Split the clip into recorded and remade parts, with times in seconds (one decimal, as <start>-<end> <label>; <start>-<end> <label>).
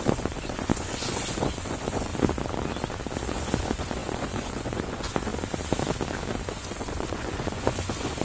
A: 0.0-2.1 remade; 2.1-3.3 recorded; 3.3-5.3 remade; 5.3-6.5 recorded; 6.5-8.2 remade